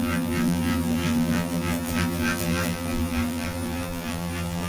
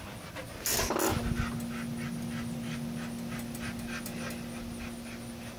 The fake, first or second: first